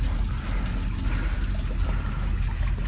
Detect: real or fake real